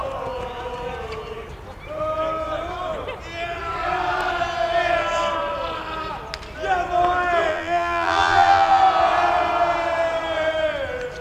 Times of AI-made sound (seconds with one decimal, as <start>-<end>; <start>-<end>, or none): 7.5-8.8